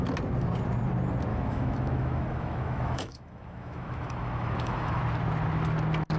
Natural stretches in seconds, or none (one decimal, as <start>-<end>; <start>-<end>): 0.0-1.3; 5.0-6.2